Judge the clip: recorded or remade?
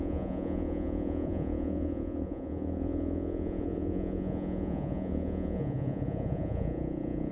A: remade